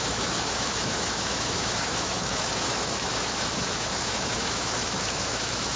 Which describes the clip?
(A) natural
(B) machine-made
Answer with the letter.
B